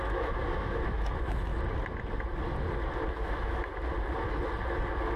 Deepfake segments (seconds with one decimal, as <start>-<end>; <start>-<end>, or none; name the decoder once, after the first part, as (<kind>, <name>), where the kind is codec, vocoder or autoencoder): 0.0-1.5 (autoencoder, DAC-VAE); 3.1-3.7